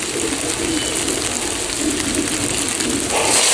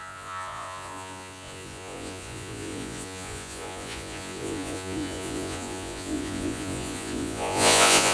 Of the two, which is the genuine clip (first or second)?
first